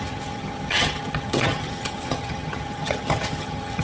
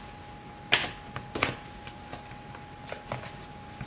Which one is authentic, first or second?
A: second